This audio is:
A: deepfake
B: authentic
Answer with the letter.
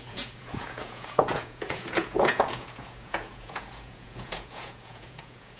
A